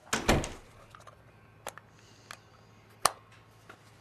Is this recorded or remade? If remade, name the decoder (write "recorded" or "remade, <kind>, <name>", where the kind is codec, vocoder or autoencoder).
recorded